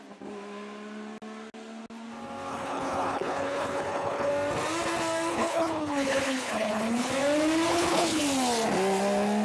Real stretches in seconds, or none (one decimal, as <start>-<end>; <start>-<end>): 0.0-2.5; 4.3-5.3; 7.1-7.7; 8.2-9.4